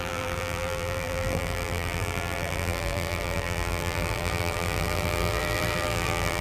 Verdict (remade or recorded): remade